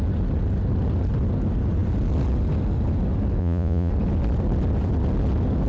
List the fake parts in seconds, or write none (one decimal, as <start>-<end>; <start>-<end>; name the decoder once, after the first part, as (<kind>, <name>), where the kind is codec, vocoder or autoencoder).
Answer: 3.4-3.9 (vocoder, Vocos)